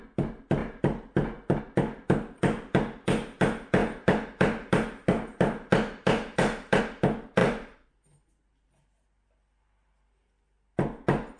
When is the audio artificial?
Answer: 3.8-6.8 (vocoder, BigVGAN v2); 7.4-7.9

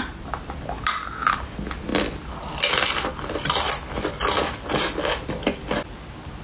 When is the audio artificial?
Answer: none

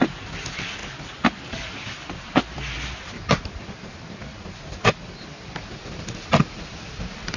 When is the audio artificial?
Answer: none